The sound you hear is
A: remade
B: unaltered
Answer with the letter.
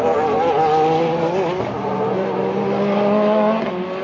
B